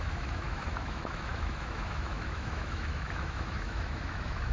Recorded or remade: remade